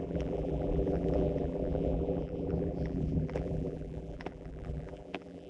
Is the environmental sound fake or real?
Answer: fake